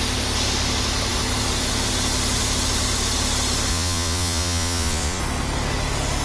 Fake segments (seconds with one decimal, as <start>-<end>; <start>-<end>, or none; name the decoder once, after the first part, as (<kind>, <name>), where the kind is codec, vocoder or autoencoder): 3.7-5.2 (vocoder, Vocos)